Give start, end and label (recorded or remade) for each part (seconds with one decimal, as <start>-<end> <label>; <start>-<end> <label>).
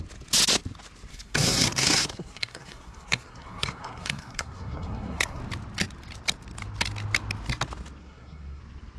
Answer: 0.0-1.1 recorded; 1.1-5.4 remade; 5.4-8.0 recorded; 8.0-8.6 remade; 8.6-9.0 recorded